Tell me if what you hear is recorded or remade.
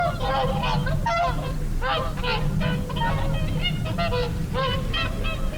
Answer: recorded